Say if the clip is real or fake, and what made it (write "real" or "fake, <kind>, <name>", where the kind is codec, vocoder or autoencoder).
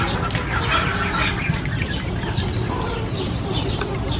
real